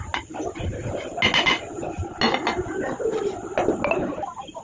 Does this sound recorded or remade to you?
recorded